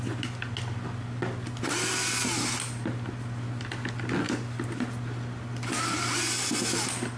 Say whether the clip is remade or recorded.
recorded